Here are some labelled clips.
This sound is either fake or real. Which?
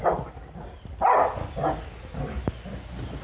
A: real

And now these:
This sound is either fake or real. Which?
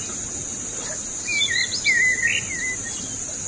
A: real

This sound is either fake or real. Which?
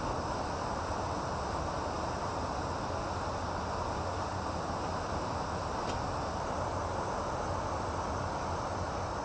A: real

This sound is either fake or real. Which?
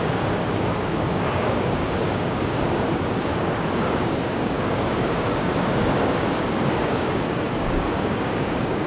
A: fake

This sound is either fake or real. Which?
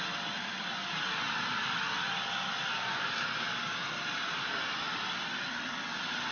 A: real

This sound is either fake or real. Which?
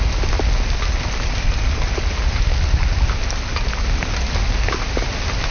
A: real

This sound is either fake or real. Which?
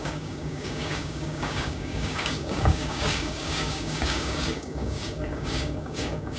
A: fake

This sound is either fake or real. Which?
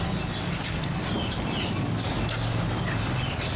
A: real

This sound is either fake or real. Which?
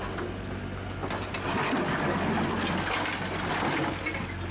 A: real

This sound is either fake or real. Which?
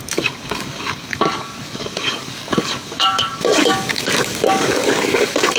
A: fake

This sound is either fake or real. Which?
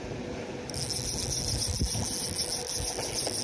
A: real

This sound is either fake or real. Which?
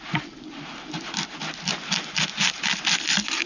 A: real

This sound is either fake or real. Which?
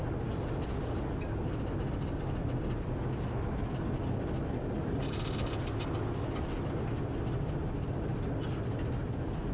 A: real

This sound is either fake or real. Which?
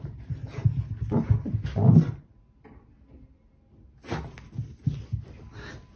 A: real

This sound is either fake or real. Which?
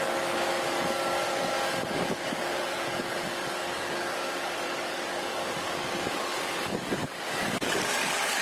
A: fake